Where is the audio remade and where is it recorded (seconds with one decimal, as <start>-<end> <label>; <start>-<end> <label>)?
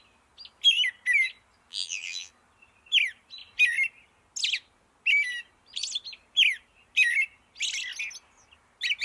0.0-1.7 recorded; 1.7-2.3 remade; 2.3-9.0 recorded